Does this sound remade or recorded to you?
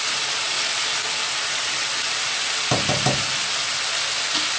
recorded